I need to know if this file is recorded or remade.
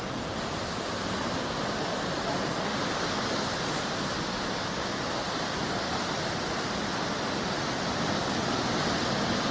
recorded